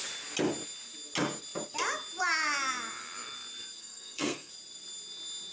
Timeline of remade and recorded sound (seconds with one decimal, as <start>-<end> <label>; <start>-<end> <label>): 0.0-3.8 recorded; 3.8-4.5 remade; 4.5-5.5 recorded